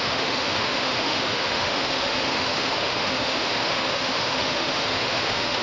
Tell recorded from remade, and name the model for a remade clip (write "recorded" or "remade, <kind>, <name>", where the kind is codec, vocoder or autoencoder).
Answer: remade, autoencoder, DAC-VAE